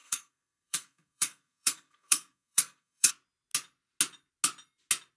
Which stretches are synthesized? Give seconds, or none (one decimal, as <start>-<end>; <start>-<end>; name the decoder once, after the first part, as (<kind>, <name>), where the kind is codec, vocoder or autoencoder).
0.0-3.1 (codec, SNAC)